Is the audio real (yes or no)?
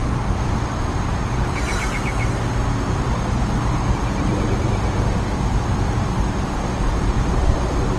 no